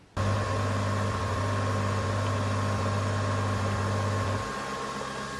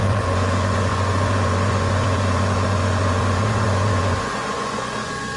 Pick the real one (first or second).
first